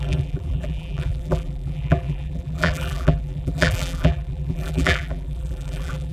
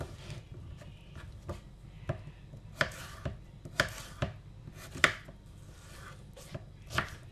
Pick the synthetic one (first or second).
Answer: first